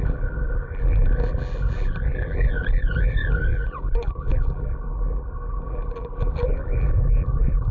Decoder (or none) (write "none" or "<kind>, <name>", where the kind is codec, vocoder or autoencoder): vocoder, BigVGAN v2